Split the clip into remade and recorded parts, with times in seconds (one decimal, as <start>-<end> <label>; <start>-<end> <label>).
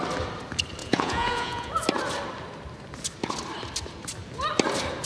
0.0-0.8 recorded; 0.8-1.7 remade; 1.7-5.0 recorded